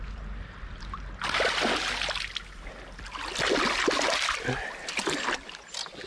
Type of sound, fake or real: real